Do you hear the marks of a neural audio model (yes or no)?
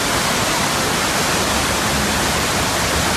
no